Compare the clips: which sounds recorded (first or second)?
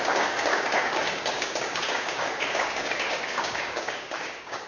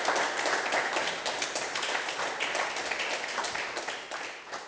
second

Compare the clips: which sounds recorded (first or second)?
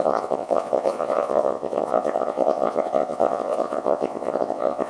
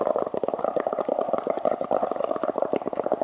second